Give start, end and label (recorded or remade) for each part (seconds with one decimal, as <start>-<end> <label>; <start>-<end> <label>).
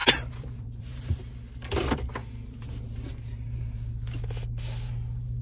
0.0-1.1 remade; 1.1-5.4 recorded